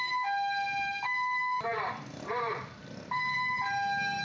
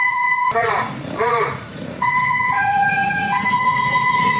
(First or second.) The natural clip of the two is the first